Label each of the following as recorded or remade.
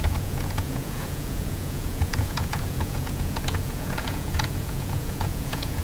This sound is remade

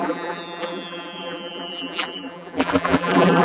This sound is remade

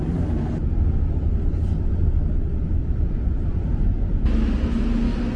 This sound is recorded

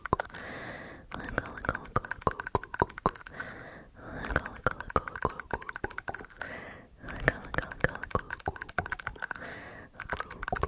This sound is recorded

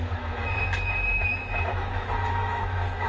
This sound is remade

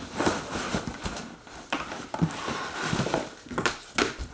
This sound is recorded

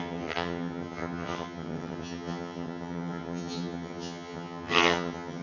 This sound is remade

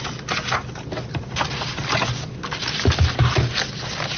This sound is recorded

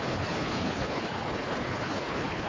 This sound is remade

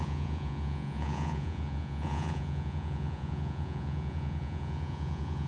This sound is remade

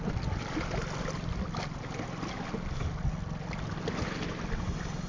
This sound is recorded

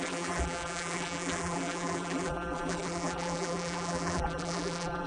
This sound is remade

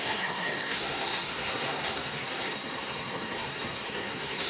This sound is remade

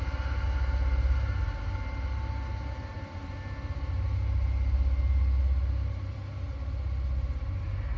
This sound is recorded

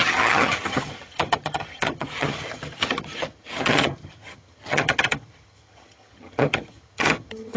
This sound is remade